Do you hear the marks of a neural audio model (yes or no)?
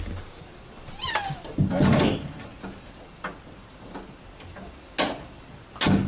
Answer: no